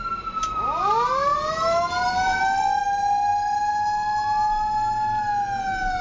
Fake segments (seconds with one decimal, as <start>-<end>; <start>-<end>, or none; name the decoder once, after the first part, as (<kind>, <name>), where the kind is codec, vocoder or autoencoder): 1.3-2.4 (vocoder, BigVGAN v2)